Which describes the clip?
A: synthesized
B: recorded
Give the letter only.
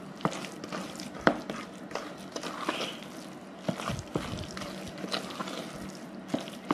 B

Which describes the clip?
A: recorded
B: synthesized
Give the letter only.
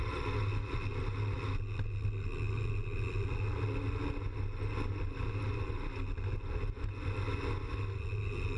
A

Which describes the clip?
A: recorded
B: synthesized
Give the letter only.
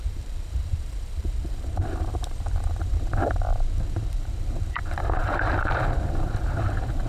B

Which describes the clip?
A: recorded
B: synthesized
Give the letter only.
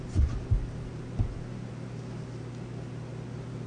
A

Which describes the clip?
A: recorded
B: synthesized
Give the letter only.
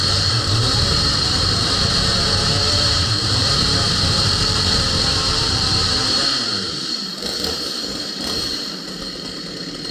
B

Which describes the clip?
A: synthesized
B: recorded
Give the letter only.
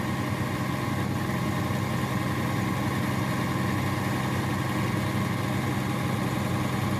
B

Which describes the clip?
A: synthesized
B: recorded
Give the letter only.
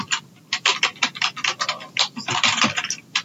A